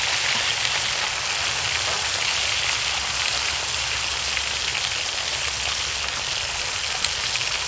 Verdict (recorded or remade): recorded